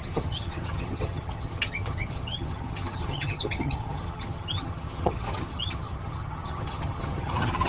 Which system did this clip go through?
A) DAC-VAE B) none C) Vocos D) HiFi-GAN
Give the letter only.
D